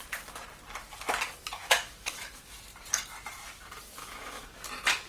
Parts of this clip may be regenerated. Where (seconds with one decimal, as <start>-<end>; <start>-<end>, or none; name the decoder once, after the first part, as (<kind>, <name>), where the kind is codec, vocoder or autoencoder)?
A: 1.6-2.6 (autoencoder, DAC-VAE); 4.0-4.6